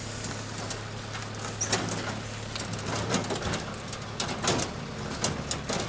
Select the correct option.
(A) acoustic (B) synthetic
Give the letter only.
A